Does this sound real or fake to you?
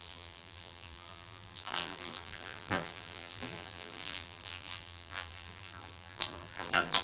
fake